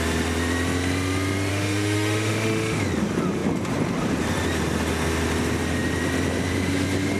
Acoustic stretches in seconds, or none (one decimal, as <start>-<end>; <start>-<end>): 0.0-1.5; 2.8-7.2